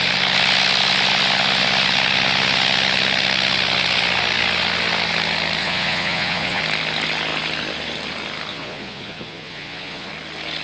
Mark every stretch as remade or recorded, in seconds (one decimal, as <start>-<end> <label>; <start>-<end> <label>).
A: 0.0-5.6 recorded; 5.6-6.6 remade; 6.6-8.5 recorded; 8.5-10.1 remade; 10.1-10.6 recorded